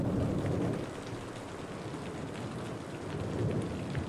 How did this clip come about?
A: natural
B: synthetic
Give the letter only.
A